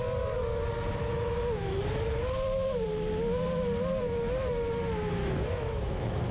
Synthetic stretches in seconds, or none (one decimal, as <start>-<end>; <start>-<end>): 1.0-1.8; 5.2-6.3